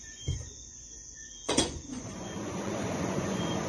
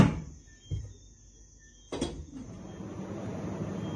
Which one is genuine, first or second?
second